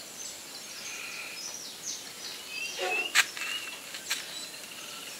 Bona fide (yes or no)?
yes